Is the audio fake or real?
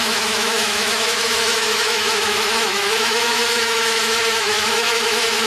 fake